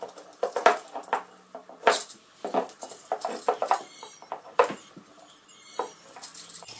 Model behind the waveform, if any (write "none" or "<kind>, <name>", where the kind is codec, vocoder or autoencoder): none